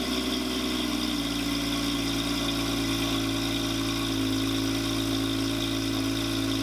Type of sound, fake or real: real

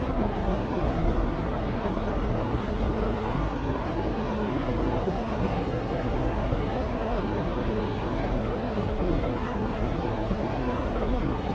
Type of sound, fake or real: fake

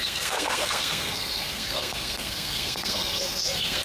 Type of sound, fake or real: fake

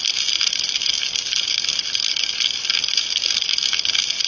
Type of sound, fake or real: real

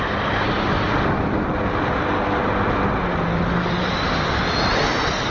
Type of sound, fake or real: real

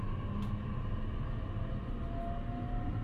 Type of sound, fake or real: real